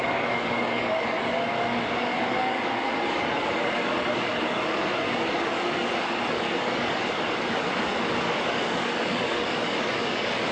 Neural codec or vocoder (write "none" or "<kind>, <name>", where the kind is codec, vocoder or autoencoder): codec, DAC